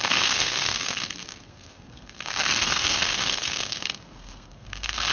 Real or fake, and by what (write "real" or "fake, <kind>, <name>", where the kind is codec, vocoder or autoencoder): fake, codec, SNAC